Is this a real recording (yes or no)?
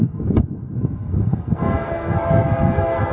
no